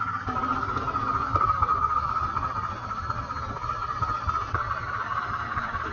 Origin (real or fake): fake